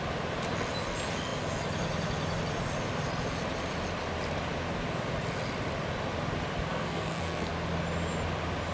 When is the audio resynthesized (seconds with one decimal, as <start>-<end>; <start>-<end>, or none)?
6.7-7.5